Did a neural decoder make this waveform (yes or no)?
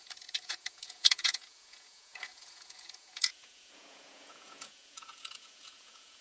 yes